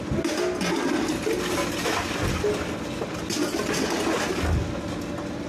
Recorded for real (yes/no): yes